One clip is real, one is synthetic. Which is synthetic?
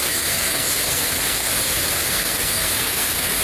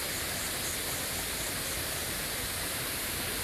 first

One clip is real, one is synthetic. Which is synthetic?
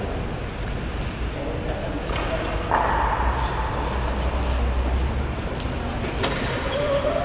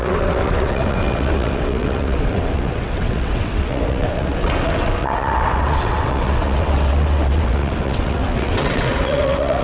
second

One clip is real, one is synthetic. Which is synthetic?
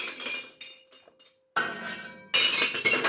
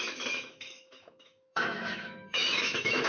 second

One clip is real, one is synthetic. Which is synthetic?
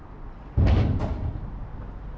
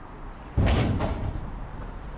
second